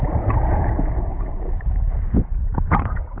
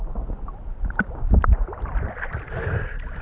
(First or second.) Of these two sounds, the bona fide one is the second